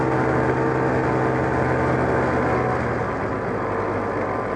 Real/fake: real